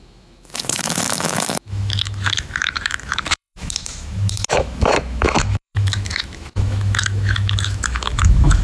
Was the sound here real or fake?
fake